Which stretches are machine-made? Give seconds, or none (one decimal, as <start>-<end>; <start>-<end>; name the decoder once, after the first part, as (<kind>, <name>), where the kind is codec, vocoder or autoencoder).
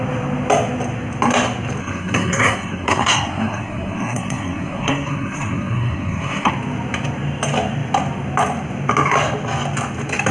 1.8-6.5 (codec, SNAC)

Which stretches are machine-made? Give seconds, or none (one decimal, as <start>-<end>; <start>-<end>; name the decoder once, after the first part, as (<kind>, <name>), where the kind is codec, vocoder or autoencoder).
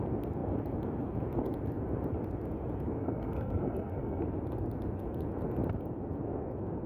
3.0-4.2 (codec, SNAC)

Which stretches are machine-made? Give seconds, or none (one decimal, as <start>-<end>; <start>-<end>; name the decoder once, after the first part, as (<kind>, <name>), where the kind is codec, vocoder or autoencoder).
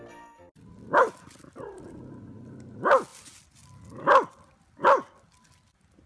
none